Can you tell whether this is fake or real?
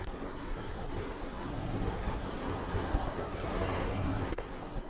fake